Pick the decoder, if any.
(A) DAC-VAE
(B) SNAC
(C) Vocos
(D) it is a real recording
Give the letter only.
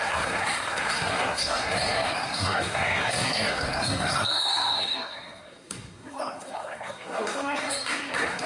B